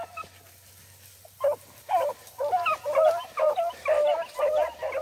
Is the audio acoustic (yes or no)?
yes